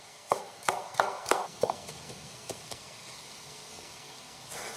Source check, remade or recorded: remade